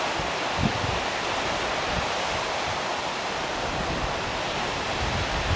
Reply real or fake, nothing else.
real